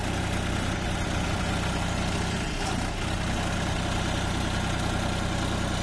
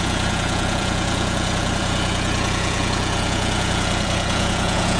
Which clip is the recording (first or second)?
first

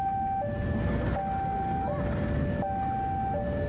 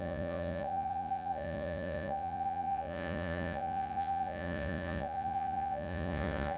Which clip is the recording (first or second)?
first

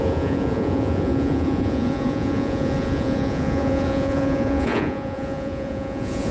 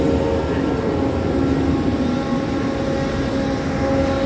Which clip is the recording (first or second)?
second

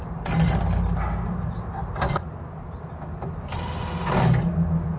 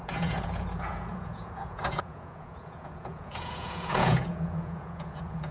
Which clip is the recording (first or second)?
first